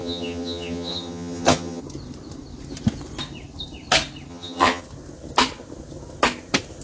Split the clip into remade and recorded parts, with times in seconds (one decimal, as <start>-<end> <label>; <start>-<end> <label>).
0.0-1.8 remade; 1.8-4.3 recorded; 4.3-4.8 remade; 4.8-6.8 recorded

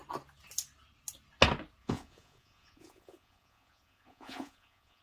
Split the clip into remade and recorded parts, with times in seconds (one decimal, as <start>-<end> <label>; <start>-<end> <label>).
0.0-1.8 recorded; 1.8-5.0 remade

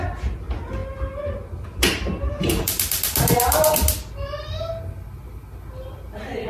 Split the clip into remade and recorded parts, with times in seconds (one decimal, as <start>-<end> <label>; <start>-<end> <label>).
0.0-6.5 recorded

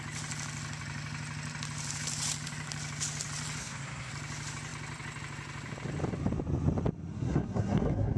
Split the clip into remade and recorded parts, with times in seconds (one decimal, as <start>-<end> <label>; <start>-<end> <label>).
0.0-3.6 recorded; 3.6-4.1 remade; 4.1-7.1 recorded; 7.1-8.2 remade

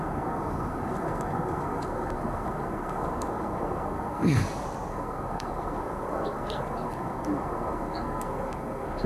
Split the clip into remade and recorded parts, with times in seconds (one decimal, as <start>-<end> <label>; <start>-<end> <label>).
0.0-4.4 remade; 4.4-4.9 recorded; 4.9-9.1 remade

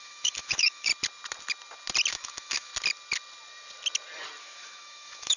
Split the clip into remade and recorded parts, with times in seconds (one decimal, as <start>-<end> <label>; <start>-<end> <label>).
0.0-0.9 remade; 0.9-2.1 recorded; 2.1-2.7 remade; 2.7-4.4 recorded; 4.4-5.4 remade

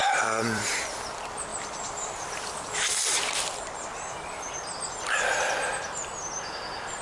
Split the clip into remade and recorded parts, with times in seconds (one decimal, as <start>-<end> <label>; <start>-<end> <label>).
0.0-0.7 remade; 0.7-1.5 recorded; 1.5-4.9 remade; 4.9-7.0 recorded

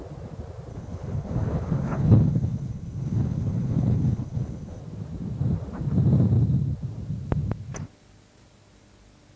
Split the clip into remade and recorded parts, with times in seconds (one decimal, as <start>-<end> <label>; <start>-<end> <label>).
0.0-0.7 recorded; 0.7-4.8 remade; 4.8-9.4 recorded